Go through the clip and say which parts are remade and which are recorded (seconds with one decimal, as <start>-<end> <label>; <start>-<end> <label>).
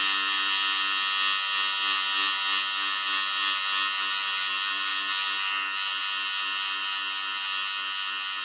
0.0-8.4 recorded